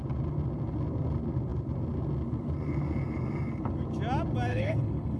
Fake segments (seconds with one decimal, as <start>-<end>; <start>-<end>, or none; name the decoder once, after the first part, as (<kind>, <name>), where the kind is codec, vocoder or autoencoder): 4.5-5.2 (codec, HILCodec)